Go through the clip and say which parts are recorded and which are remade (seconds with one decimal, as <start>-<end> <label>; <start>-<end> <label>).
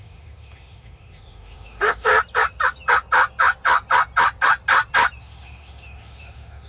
0.0-2.1 remade; 2.1-5.2 recorded; 5.2-6.7 remade